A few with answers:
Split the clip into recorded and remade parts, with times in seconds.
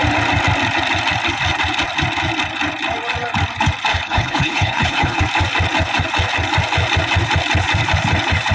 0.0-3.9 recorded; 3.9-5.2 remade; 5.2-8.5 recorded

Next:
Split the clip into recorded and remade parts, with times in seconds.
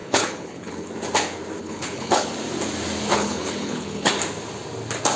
0.0-0.9 remade; 0.9-1.6 recorded; 1.6-2.3 remade; 2.3-3.1 recorded; 3.1-4.1 remade; 4.1-5.2 recorded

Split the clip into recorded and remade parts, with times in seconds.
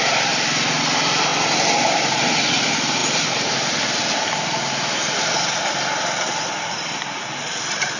0.0-8.0 recorded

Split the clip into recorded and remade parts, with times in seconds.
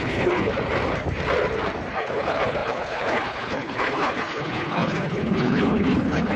0.0-0.5 remade; 0.5-1.9 recorded; 1.9-6.4 remade